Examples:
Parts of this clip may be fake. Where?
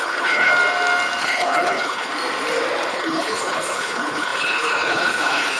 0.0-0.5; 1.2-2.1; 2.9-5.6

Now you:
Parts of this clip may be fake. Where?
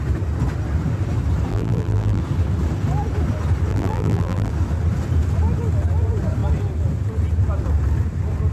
1.5-2.2; 3.7-4.5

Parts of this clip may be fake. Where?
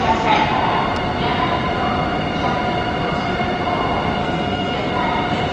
4.2-4.9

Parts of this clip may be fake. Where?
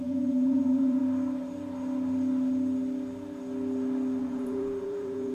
0.0-1.0; 4.2-5.3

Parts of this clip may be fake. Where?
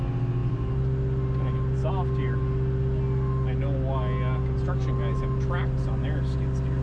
none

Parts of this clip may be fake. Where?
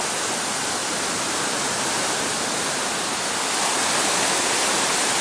none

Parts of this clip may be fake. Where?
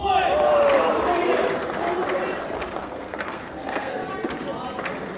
2.8-4.1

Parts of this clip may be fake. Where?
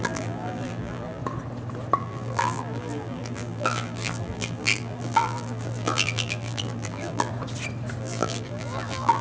0.0-1.2; 2.0-7.3; 8.0-9.2